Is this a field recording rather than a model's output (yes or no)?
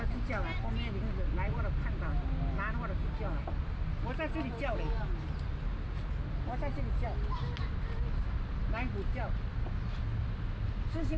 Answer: yes